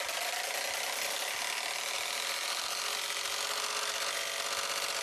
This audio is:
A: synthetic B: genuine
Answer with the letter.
B